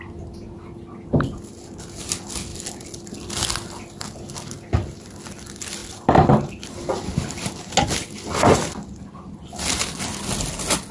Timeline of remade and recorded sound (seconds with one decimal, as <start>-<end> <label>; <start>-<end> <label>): 0.0-2.5 recorded; 2.5-3.3 remade; 3.3-5.8 recorded; 5.8-6.9 remade; 6.9-10.9 recorded